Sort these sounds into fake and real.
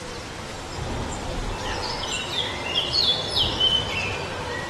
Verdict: real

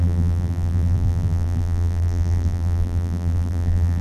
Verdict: fake